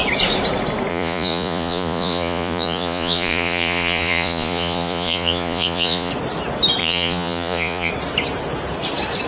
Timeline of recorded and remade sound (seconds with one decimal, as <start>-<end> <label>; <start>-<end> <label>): 0.0-0.9 recorded; 0.9-6.1 remade; 6.1-6.8 recorded; 6.8-7.9 remade; 7.9-9.3 recorded